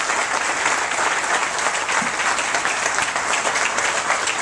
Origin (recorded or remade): recorded